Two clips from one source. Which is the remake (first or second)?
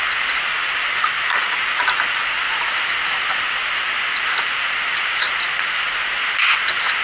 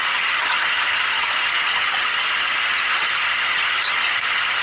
second